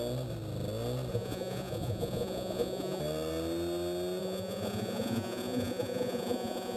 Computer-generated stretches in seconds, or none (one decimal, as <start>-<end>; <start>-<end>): 1.1-3.0; 4.2-6.8